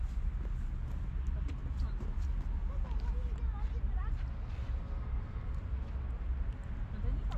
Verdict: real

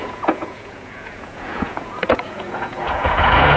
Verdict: fake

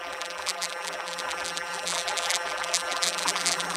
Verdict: fake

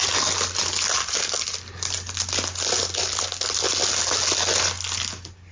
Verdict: real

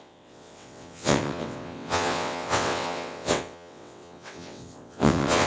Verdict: fake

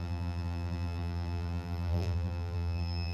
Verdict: fake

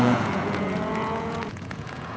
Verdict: fake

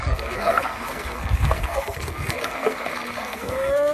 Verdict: fake